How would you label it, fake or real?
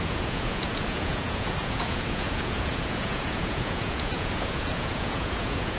fake